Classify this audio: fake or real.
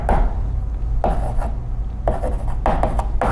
real